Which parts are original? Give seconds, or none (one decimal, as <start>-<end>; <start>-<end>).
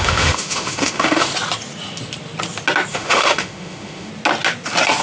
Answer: 1.3-2.9; 4.1-5.0